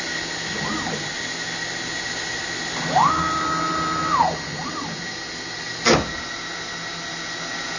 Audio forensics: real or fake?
real